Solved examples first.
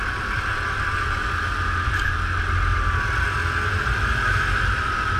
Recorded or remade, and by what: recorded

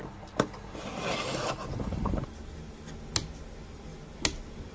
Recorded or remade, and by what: recorded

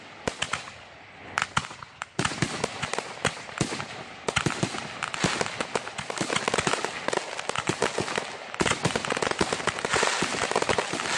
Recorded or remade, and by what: recorded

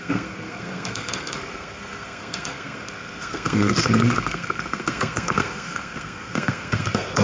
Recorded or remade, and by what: remade, codec, SNAC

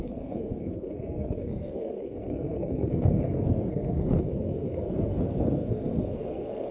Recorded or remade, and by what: remade, codec, SNAC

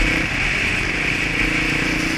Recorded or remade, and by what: recorded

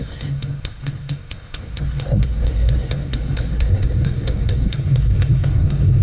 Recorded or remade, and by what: remade, codec, SNAC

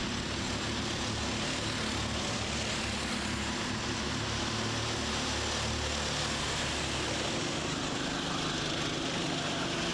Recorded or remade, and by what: recorded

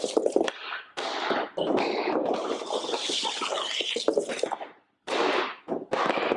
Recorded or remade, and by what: recorded